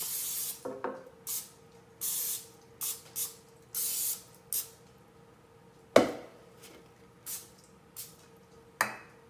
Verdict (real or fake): real